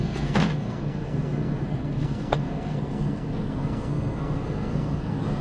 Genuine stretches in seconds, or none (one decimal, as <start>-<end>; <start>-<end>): none